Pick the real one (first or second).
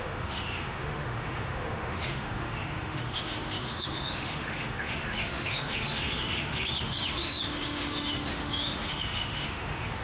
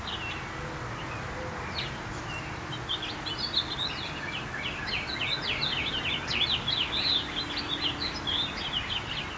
second